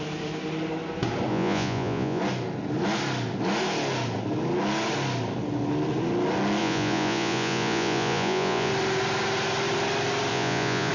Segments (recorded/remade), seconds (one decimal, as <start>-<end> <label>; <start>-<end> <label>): 0.0-1.3 recorded; 1.3-2.2 remade; 2.2-6.6 recorded; 6.6-8.7 remade; 8.7-10.3 recorded; 10.3-10.9 remade